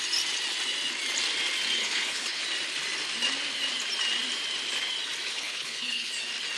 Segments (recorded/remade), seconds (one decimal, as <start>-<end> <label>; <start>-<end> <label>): 0.0-1.8 recorded; 1.8-2.4 remade; 2.4-5.3 recorded; 5.3-6.1 remade; 6.1-6.6 recorded